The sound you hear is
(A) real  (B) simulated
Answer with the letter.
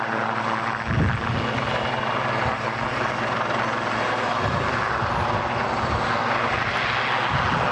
A